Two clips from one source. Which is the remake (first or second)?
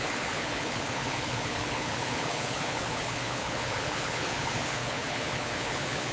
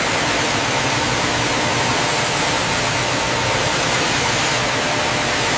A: first